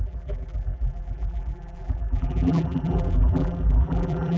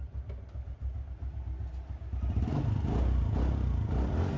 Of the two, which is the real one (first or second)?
second